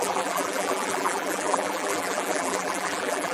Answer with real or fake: fake